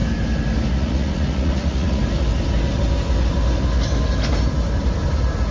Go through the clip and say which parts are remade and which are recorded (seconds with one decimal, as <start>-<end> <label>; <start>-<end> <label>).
0.0-0.7 recorded; 0.7-2.0 remade; 2.0-5.5 recorded